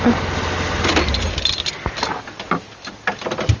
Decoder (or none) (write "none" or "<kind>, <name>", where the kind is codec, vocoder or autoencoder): none